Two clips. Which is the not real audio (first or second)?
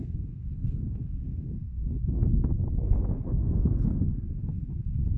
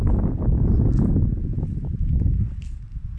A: first